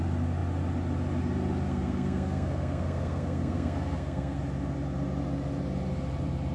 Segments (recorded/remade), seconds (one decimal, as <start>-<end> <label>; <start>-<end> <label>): 0.0-1.7 recorded; 1.7-4.4 remade; 4.4-6.5 recorded